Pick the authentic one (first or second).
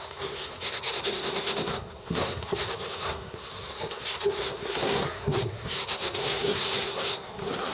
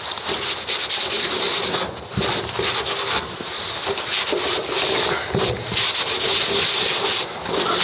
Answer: second